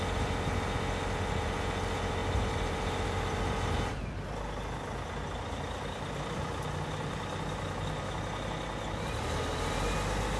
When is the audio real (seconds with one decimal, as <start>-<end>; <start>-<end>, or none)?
0.0-10.4